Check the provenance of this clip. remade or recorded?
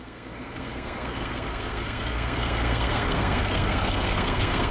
remade